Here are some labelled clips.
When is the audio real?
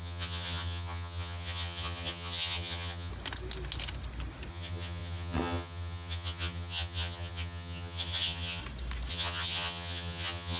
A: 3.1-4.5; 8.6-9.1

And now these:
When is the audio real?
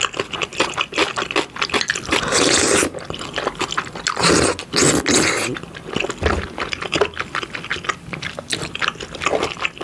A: 0.0-9.8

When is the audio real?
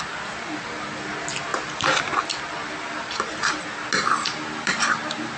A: 0.0-5.4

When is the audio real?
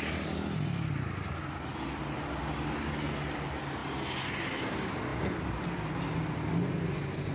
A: 0.0-7.3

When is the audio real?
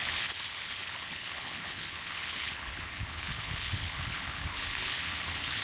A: none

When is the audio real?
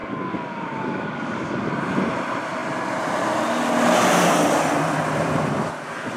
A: 1.7-6.2